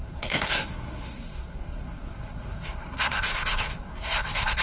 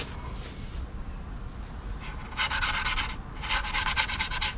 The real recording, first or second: second